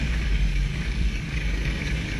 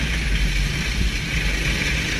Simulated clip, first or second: first